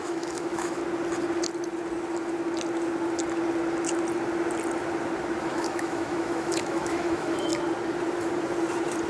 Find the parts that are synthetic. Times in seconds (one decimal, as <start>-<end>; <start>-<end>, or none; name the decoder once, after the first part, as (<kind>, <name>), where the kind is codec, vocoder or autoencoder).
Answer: 0.0-0.8 (autoencoder, DAC-VAE); 5.4-7.5